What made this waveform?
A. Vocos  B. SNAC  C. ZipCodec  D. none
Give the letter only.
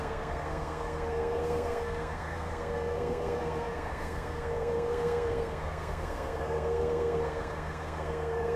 B